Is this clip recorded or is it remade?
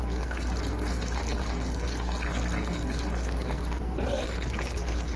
remade